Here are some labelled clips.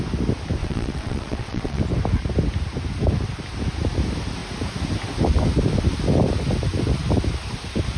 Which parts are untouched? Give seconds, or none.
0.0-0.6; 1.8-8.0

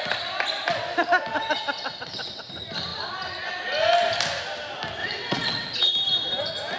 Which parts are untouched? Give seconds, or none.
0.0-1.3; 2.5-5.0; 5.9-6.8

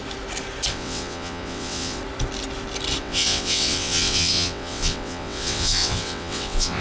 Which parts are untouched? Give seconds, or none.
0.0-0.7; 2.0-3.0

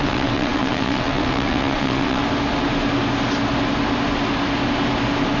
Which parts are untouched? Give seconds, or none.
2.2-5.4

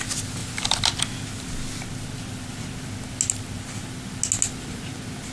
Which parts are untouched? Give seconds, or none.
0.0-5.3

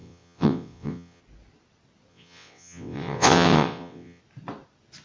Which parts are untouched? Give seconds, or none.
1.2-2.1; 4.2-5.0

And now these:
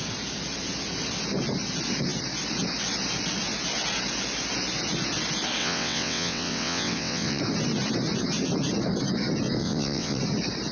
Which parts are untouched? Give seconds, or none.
0.0-5.6; 7.4-9.6; 10.2-10.7